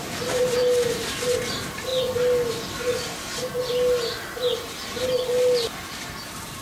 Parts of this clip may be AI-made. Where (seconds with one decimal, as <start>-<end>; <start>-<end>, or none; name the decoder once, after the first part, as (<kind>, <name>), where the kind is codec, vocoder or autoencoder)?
none